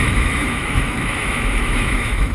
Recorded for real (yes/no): no